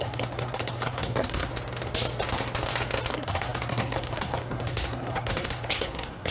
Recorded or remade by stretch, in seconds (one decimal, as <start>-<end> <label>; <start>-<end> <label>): 0.0-1.5 remade; 1.5-3.1 recorded; 3.1-6.3 remade

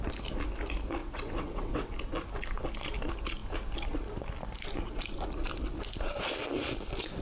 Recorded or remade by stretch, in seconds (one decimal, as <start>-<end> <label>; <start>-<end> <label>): 0.0-1.0 recorded; 1.0-1.9 remade; 1.9-7.2 recorded

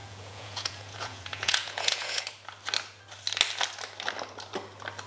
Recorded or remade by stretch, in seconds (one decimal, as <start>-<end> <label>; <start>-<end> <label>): 0.0-2.2 remade; 2.2-5.1 recorded

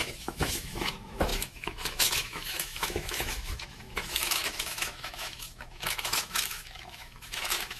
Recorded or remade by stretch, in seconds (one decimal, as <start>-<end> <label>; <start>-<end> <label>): 0.0-7.8 remade

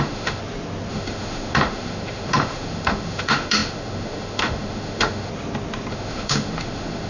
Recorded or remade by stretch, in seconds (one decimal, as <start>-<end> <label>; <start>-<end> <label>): 0.0-0.4 remade; 0.4-0.9 recorded; 0.9-5.3 remade; 5.3-5.9 recorded; 5.9-7.1 remade